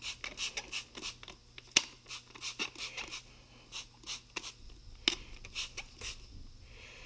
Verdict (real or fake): real